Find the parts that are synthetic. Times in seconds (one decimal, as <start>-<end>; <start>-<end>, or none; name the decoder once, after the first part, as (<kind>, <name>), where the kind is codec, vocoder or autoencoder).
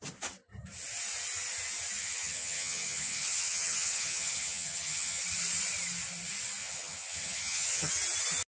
2.0-5.2 (vocoder, HiFi-GAN); 6.6-7.9